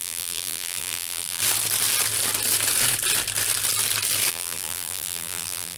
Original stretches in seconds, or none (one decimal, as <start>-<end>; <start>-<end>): 1.4-4.3